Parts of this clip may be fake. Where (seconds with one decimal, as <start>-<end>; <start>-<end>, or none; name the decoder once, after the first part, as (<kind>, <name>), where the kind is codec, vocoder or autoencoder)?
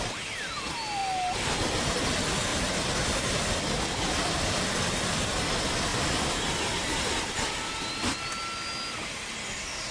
none